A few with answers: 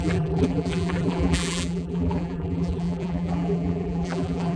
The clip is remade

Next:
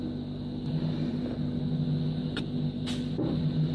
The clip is recorded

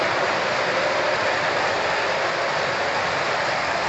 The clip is recorded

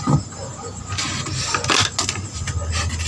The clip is recorded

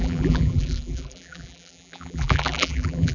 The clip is remade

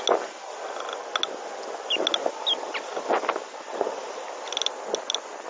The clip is recorded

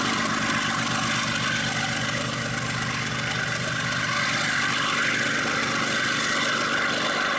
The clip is recorded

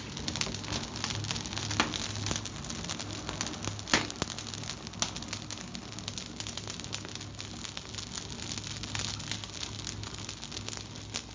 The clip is recorded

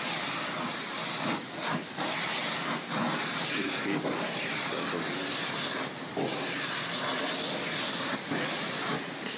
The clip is recorded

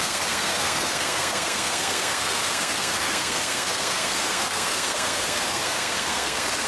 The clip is remade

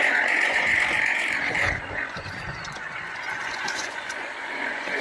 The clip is remade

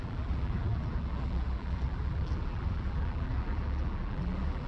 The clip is remade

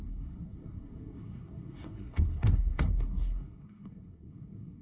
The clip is remade